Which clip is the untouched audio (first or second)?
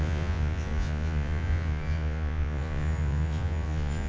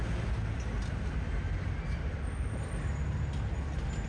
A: second